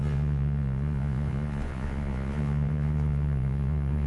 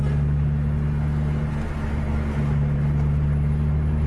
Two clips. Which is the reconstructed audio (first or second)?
first